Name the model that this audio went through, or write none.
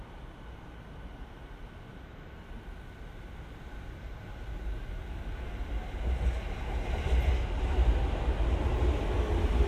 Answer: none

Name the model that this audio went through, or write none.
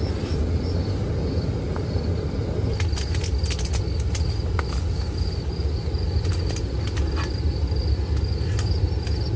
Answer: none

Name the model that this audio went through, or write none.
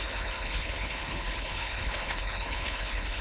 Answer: codec, HILCodec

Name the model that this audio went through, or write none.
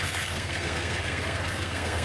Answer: codec, SNAC